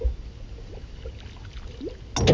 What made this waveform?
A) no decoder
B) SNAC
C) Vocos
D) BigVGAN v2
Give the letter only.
A